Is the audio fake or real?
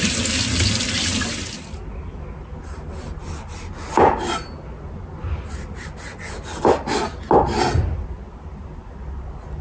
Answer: real